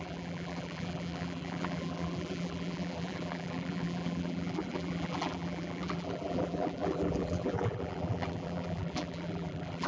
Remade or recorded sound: remade